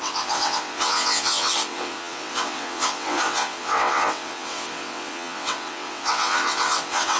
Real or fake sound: fake